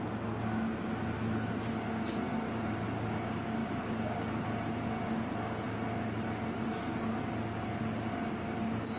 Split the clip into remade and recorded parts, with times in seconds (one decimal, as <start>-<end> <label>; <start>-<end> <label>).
0.0-9.0 recorded